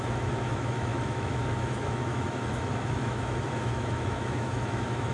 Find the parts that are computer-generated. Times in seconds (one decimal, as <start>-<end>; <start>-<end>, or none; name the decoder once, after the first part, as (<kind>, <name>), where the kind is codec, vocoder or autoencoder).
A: 0.0-5.1 (autoencoder, DAC-VAE)